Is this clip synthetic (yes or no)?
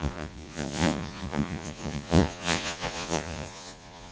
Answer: yes